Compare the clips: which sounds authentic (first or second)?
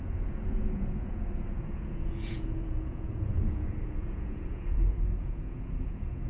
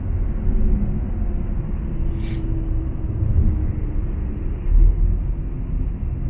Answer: second